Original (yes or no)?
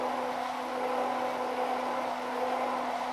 yes